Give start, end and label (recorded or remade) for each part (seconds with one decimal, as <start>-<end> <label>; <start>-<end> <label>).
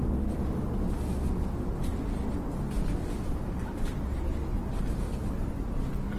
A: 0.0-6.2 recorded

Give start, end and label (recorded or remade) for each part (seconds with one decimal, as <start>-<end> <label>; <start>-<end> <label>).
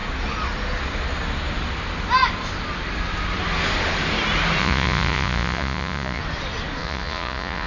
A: 0.0-4.6 recorded; 4.6-6.2 remade; 6.2-6.8 recorded; 6.8-7.7 remade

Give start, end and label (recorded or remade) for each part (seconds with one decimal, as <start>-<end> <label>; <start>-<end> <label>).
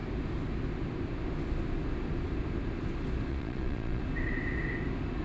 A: 0.0-3.3 recorded; 3.3-4.0 remade; 4.0-5.2 recorded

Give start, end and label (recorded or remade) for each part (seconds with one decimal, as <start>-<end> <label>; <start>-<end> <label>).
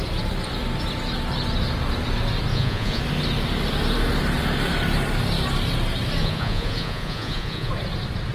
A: 0.0-2.5 recorded; 2.5-3.0 remade; 3.0-6.2 recorded; 6.2-7.7 remade; 7.7-8.3 recorded